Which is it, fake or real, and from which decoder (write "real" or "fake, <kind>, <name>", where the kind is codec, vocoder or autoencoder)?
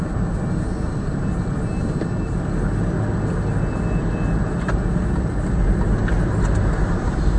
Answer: real